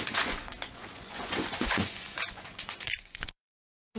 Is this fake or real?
fake